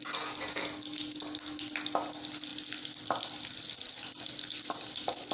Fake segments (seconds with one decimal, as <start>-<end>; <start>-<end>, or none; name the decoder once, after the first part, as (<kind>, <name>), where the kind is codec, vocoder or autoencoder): none